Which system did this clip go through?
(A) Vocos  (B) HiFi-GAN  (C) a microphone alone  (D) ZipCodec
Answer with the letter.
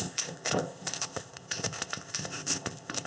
D